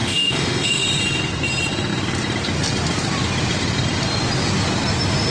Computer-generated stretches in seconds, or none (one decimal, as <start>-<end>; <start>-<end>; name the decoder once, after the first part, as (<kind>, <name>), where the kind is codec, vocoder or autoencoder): 0.0-1.0 (autoencoder, DAC-VAE)